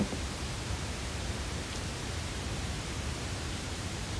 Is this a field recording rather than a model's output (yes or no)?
no